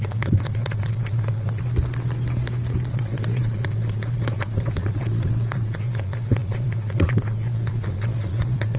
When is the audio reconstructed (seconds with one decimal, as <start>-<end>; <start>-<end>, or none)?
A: 0.0-1.6; 2.9-8.8